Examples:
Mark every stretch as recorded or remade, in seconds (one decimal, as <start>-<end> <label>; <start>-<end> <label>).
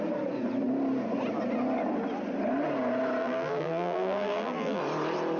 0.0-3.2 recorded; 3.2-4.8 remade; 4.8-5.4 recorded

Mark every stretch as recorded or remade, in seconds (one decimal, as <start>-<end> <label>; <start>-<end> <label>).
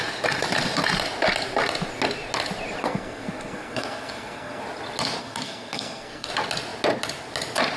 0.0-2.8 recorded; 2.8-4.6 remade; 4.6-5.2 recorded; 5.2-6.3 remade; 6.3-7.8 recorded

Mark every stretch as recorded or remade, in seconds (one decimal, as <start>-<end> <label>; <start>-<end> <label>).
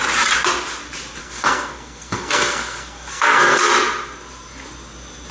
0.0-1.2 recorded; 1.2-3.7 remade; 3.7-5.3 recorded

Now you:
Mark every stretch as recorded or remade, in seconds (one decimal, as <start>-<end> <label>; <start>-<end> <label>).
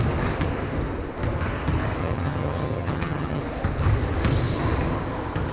0.0-2.0 recorded; 2.0-3.4 remade; 3.4-5.5 recorded